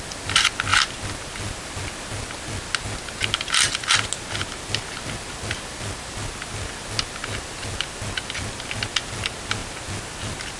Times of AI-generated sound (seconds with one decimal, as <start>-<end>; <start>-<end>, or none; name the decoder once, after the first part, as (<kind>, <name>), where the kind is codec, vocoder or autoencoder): none